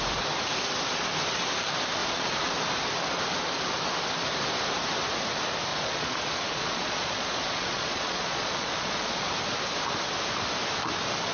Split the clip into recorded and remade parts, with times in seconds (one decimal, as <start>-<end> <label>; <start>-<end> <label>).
0.0-2.0 recorded; 2.0-2.5 remade; 2.5-5.7 recorded; 5.7-9.3 remade; 9.3-11.3 recorded